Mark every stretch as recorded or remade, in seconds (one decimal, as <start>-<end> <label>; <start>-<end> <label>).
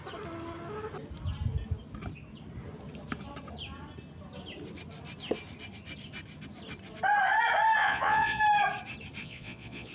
0.0-7.8 recorded; 7.8-8.4 remade; 8.4-9.2 recorded; 9.2-9.9 remade